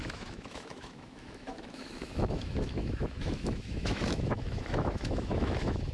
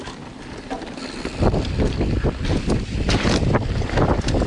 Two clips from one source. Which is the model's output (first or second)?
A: first